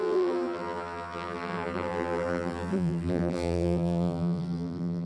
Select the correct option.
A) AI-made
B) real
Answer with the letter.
A